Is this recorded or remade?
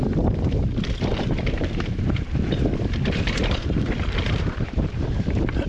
remade